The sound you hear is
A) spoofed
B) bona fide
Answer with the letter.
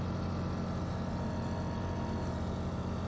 B